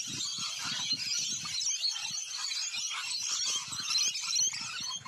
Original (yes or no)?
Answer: yes